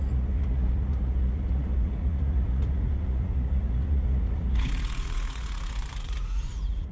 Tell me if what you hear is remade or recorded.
remade